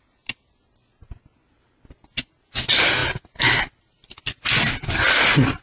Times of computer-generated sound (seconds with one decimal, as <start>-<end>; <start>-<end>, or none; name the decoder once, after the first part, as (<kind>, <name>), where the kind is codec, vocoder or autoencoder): none